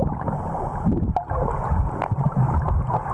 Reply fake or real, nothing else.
real